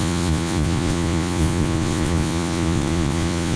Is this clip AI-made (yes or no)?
yes